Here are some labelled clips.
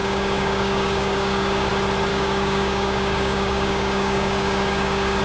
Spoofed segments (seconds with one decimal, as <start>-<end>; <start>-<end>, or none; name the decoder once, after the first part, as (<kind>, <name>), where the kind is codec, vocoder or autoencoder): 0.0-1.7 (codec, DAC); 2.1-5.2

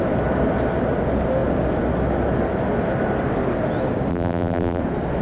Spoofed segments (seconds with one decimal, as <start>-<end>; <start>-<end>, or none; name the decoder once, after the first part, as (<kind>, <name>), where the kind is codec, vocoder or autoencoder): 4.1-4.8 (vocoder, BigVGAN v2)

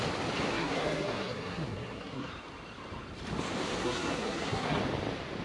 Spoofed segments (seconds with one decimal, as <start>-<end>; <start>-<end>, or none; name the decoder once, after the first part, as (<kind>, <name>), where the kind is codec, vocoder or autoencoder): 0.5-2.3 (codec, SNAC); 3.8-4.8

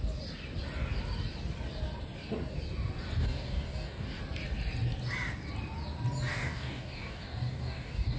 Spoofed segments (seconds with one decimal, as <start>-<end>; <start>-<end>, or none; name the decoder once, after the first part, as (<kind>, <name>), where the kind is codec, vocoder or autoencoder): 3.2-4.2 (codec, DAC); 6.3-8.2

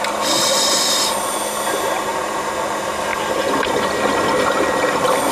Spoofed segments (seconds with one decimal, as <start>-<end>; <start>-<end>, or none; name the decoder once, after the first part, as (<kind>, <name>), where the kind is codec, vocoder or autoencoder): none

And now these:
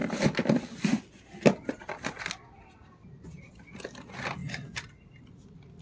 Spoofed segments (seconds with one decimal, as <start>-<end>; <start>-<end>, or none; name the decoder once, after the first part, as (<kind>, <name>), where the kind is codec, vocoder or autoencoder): none

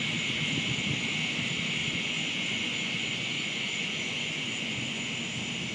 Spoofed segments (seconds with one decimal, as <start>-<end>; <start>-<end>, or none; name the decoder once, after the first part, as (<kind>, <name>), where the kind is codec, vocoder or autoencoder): 1.8-5.1 (vocoder, Vocos)